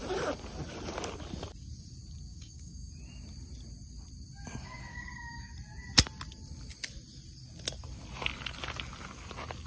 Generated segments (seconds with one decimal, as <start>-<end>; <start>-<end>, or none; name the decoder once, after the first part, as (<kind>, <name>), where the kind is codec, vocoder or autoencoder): 2.3-2.9 (codec, DAC); 4.9-5.5